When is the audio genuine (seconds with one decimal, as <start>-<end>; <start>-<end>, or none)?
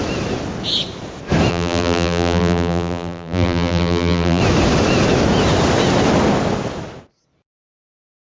0.0-1.5; 4.4-8.3